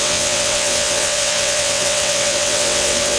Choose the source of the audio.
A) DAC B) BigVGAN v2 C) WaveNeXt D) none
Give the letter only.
C